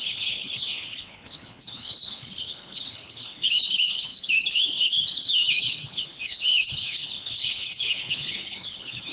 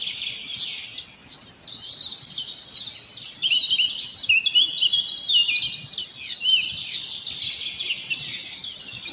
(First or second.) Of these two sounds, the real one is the second